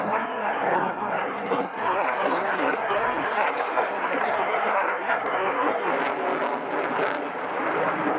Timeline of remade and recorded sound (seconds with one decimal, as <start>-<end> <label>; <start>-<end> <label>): 0.0-5.9 remade; 5.9-8.2 recorded